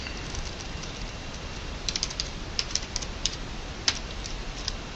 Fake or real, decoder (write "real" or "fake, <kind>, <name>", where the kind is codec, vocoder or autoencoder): fake, vocoder, BigVGAN v2